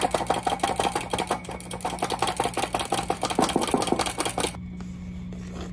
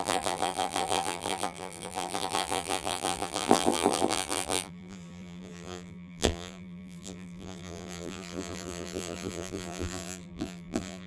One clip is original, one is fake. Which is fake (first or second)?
second